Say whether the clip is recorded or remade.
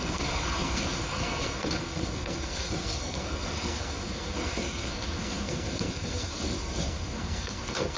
remade